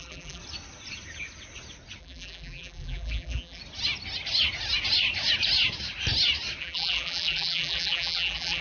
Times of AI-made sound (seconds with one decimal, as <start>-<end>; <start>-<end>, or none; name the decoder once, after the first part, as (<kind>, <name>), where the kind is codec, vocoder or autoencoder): 0.0-0.4 (vocoder, BigVGAN v2); 2.0-3.6; 6.6-8.6